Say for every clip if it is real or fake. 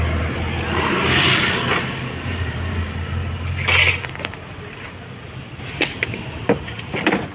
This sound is real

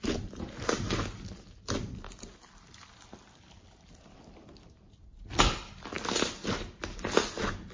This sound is real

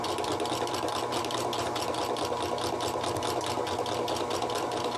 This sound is real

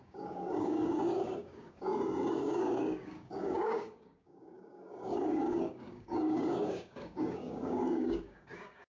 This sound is fake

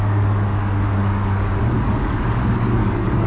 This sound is fake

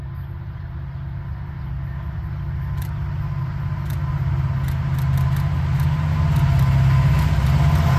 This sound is real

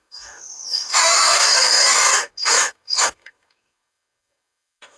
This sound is fake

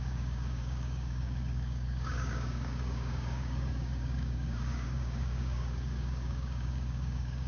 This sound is fake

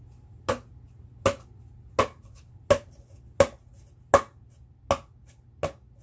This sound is real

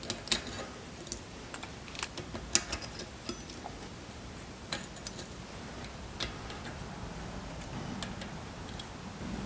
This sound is real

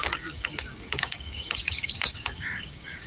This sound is fake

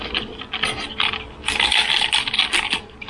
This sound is real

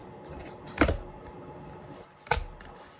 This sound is real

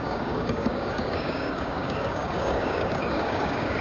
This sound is fake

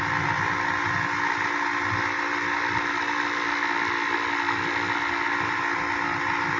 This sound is real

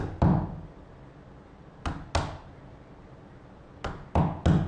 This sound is real